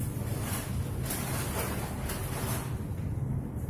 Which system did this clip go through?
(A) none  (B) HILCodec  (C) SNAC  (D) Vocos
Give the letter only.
A